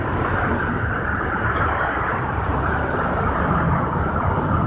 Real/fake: real